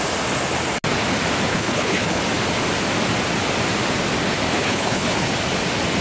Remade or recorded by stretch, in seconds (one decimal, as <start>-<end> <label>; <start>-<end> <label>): 0.0-1.5 recorded; 1.5-2.2 remade; 2.2-4.5 recorded; 4.5-5.3 remade; 5.3-6.0 recorded